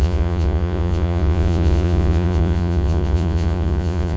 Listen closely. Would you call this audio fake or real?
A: fake